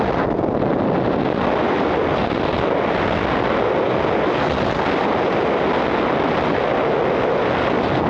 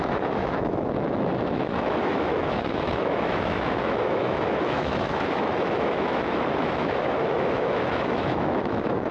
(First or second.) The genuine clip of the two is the first